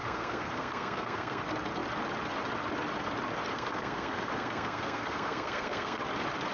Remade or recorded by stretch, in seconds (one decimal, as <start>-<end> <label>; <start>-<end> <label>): 0.0-1.4 remade; 1.4-3.5 recorded; 3.5-6.0 remade; 6.0-6.5 recorded